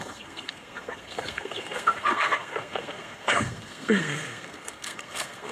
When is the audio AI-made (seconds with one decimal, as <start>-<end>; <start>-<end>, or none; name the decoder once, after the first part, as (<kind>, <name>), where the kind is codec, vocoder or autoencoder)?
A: 0.0-5.5 (codec, SNAC)